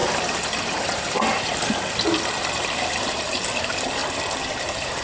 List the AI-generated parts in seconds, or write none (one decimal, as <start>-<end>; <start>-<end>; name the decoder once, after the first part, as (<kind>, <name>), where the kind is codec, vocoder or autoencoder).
3.0-4.0 (vocoder, BigVGAN v2); 4.6-5.0